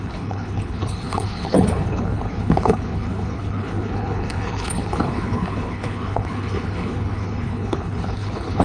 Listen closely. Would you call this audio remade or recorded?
remade